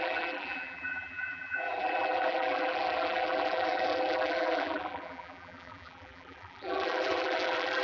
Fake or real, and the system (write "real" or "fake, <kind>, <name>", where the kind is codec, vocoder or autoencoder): fake, vocoder, BigVGAN v2